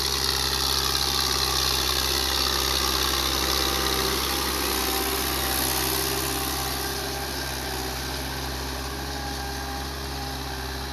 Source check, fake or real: real